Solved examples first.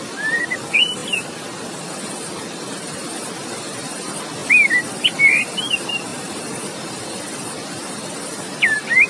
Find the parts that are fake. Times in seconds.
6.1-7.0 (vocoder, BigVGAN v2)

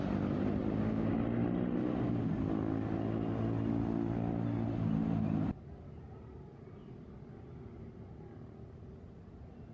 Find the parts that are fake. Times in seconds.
none

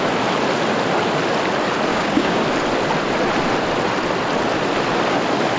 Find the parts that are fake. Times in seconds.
1.9-2.4 (codec, DAC)

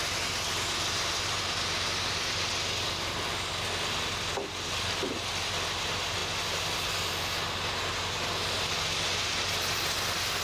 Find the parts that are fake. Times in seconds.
none

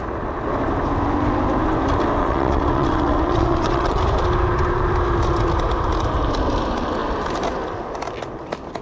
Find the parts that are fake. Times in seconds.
2.2-4.0 (vocoder, WaveNeXt)

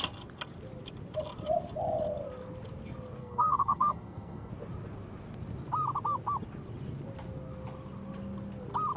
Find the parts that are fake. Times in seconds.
3.2-4.5 (codec, SNAC)